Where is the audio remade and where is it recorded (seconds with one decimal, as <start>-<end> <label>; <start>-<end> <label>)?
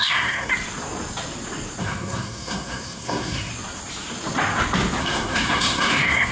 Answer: 0.0-0.5 remade; 0.5-1.8 recorded; 1.8-3.5 remade; 3.5-5.0 recorded; 5.0-6.3 remade